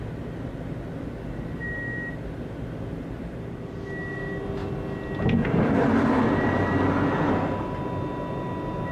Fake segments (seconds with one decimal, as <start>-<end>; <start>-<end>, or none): none